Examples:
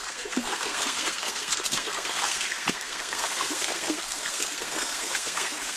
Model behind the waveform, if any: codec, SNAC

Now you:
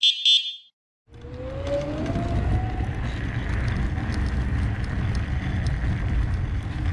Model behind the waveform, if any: none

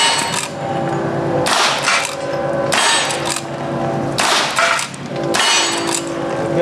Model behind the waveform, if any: none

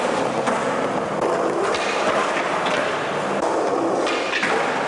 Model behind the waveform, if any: none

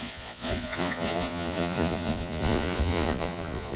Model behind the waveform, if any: vocoder, Vocos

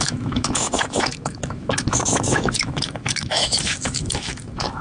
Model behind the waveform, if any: autoencoder, DAC-VAE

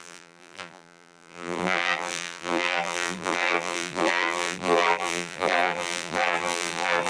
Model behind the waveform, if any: vocoder, BigVGAN v2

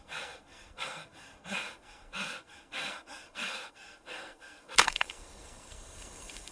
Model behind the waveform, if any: codec, SNAC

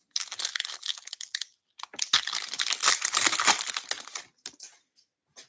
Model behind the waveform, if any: none